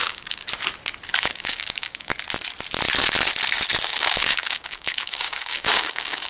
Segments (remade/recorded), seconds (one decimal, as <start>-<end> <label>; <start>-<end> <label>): 0.0-0.4 remade; 0.4-1.2 recorded; 1.2-2.1 remade; 2.1-3.8 recorded; 3.8-6.3 remade